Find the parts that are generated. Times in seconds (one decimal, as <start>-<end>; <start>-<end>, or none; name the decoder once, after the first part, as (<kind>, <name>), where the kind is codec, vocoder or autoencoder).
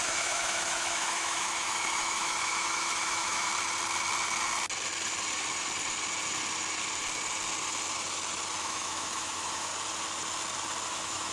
0.0-3.5 (autoencoder, DAC-VAE); 8.6-9.7; 10.9-11.3